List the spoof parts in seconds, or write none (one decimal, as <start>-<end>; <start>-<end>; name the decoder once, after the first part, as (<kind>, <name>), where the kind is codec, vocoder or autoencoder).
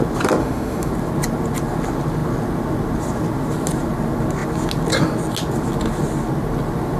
0.4-0.9 (autoencoder, DAC-VAE)